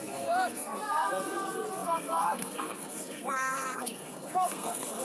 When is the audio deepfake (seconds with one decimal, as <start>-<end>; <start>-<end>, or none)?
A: 0.0-5.0